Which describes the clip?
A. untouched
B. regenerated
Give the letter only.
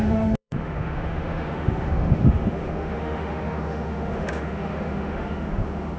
B